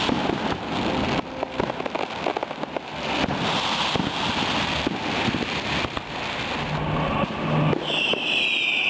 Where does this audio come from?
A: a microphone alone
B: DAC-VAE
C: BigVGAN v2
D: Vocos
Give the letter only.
A